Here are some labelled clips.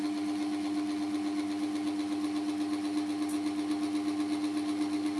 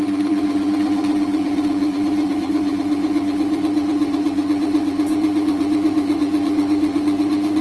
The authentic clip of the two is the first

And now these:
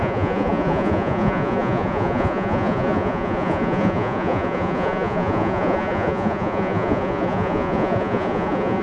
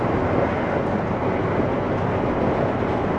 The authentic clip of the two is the second